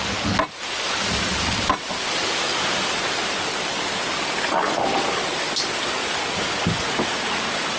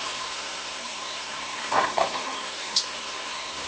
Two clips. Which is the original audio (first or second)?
first